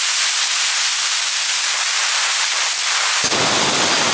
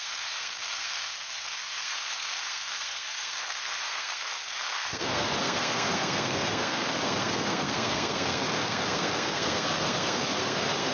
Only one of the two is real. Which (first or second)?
first